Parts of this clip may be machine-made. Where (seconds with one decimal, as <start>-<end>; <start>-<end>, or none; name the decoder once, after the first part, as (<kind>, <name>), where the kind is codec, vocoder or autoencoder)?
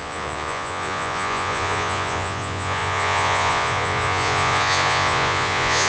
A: 0.0-5.9 (vocoder, Vocos)